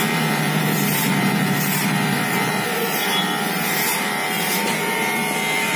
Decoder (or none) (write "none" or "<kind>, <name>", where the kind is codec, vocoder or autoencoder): vocoder, BigVGAN v2